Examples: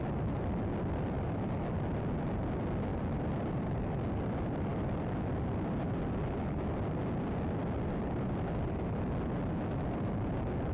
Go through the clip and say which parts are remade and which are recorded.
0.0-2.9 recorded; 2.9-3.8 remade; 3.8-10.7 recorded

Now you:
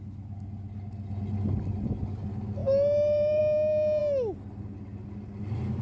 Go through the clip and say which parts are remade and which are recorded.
0.0-2.6 recorded; 2.6-3.4 remade; 3.4-5.8 recorded

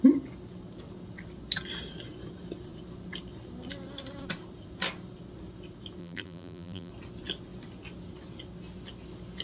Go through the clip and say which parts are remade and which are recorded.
0.0-6.0 recorded; 6.0-6.9 remade; 6.9-9.4 recorded